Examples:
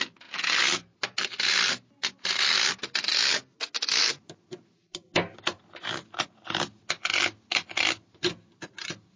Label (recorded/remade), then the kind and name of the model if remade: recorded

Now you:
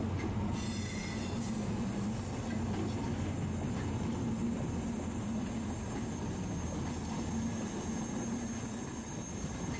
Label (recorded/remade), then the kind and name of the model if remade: recorded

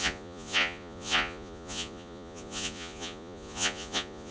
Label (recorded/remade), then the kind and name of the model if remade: remade, vocoder, Vocos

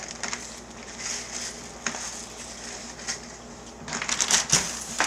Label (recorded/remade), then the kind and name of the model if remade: recorded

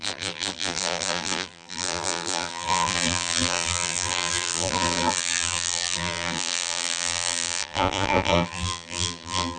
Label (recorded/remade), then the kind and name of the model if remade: remade, vocoder, BigVGAN v2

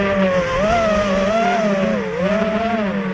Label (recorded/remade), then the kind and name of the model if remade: recorded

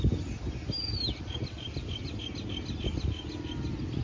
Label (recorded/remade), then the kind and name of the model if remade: recorded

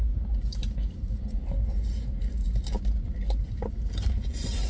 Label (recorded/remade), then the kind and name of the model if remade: recorded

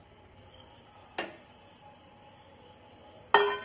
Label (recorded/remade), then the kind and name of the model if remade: recorded